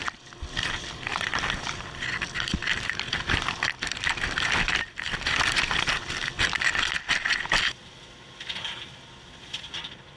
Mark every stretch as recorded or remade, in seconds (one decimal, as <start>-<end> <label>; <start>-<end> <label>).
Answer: 0.0-6.2 remade; 6.2-7.7 recorded; 7.7-10.2 remade